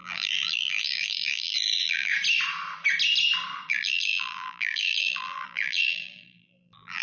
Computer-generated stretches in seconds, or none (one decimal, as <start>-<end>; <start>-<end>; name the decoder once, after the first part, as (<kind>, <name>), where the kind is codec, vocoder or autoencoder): 0.0-2.1 (vocoder, BigVGAN v2); 3.7-7.0